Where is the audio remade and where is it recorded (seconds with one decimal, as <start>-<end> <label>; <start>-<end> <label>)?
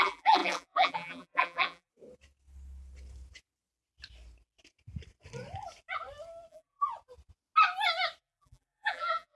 0.0-1.9 remade; 1.9-6.5 recorded; 6.5-6.9 remade; 6.9-8.2 recorded; 8.2-9.4 remade